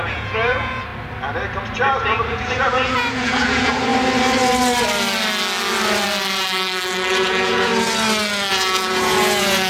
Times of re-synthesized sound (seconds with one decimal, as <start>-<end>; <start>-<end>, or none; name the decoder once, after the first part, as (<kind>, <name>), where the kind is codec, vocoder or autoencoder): 0.0-0.9 (vocoder, Vocos); 2.3-3.9; 7.1-7.7; 8.5-9.7